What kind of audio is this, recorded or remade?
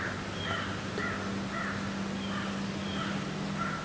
recorded